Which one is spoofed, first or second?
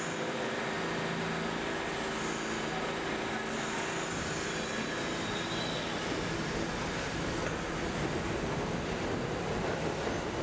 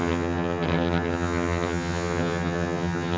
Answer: second